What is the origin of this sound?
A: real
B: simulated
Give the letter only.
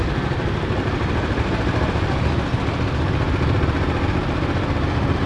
A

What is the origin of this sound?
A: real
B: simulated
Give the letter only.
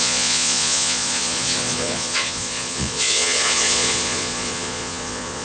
B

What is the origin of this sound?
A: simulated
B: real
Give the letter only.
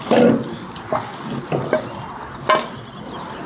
B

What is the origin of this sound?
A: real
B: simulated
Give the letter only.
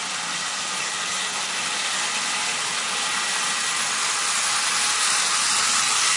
A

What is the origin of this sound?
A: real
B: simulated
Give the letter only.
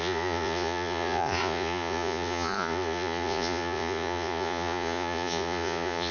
B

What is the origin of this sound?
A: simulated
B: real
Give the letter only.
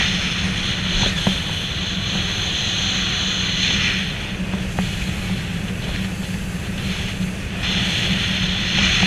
B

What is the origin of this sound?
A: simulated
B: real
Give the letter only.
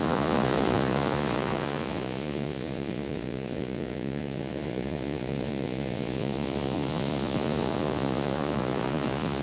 A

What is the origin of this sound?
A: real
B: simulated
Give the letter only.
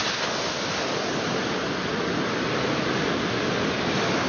A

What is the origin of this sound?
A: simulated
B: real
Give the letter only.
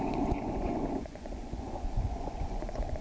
A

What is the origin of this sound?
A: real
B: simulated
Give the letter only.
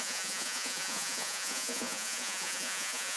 B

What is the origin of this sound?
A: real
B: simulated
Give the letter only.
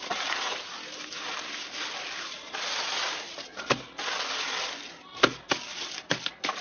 A